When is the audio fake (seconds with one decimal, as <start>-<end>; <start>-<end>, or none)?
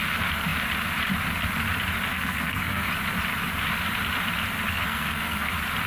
2.1-2.9; 4.7-5.5